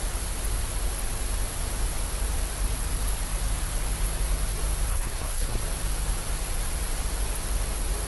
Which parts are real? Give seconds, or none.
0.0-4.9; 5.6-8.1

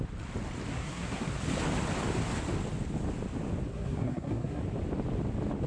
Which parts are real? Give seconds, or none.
0.0-0.7; 1.3-3.7; 4.6-5.7

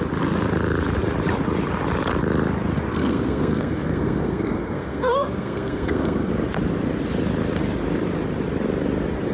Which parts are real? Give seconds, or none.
0.0-2.9; 6.3-9.3

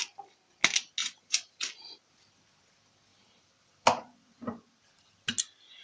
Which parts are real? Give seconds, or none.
0.0-1.0; 2.1-3.1; 4.0-5.8

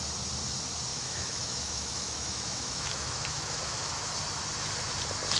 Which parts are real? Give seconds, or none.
0.0-0.9; 4.1-5.4

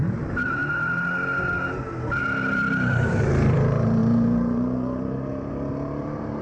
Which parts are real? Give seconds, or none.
0.6-2.2

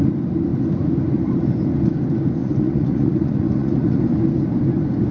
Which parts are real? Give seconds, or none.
0.0-2.4; 4.0-5.1